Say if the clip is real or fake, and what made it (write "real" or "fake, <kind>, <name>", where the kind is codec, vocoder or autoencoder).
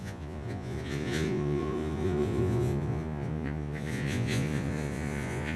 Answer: fake, vocoder, Vocos